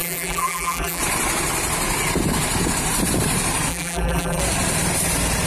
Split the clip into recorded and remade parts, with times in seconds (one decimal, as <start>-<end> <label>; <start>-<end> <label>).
0.0-1.0 remade; 1.0-3.7 recorded; 3.7-4.4 remade; 4.4-5.5 recorded